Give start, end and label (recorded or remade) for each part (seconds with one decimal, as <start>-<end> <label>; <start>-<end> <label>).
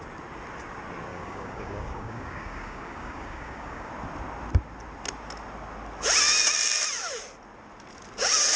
0.0-1.1 recorded; 1.1-3.9 remade; 3.9-8.6 recorded